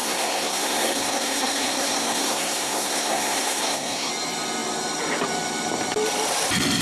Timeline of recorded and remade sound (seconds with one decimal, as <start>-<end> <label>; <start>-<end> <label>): 0.0-4.1 remade; 4.1-6.8 recorded